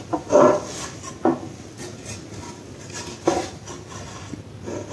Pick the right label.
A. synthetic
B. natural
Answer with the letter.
B